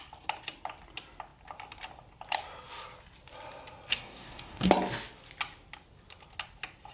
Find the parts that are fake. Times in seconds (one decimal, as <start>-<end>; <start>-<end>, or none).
3.9-4.7